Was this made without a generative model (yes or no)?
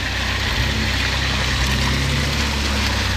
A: yes